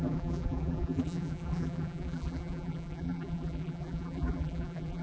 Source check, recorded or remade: remade